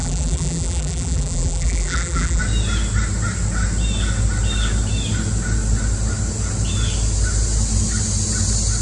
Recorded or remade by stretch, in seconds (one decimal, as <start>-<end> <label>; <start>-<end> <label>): 0.0-2.4 remade; 2.4-8.8 recorded